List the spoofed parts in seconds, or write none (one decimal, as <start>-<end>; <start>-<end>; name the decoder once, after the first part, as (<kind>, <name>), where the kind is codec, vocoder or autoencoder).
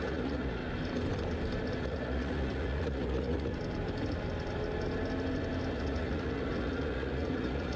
0.0-0.6 (vocoder, Vocos); 1.8-3.5; 5.7-7.8